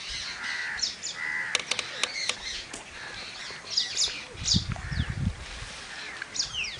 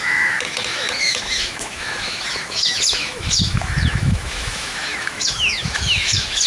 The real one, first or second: first